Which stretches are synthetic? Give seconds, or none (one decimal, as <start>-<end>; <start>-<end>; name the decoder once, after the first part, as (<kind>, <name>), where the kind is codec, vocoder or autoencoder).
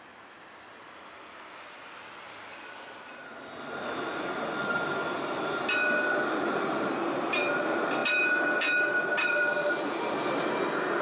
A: none